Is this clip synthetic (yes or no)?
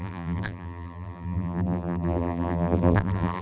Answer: yes